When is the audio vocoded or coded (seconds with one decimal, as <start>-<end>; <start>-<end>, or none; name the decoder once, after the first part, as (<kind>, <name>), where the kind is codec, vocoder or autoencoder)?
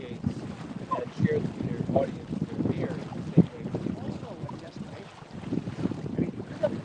none